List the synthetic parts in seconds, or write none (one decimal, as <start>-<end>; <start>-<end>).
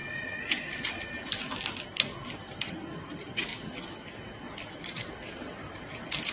2.7-3.5; 4.8-6.3